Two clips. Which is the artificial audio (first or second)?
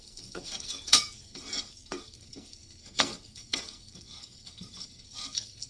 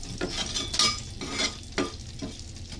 first